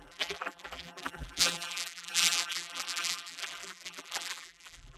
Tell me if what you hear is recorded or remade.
remade